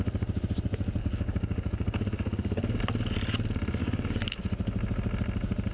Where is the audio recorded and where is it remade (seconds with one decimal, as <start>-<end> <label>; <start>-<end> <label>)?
0.0-1.0 recorded; 1.0-2.8 remade; 2.8-3.8 recorded; 3.8-4.4 remade; 4.4-5.7 recorded